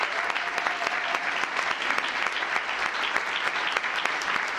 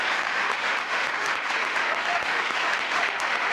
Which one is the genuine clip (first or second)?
first